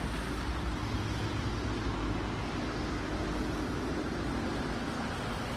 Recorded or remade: recorded